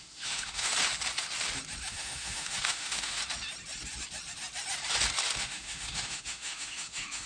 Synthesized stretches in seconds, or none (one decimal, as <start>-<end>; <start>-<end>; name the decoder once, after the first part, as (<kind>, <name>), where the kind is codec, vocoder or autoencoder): 0.0-0.7 (autoencoder, DAC-VAE); 1.9-3.2; 5.4-7.3